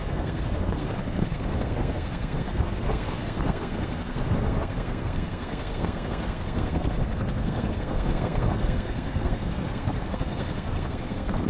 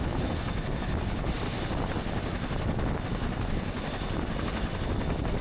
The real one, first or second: second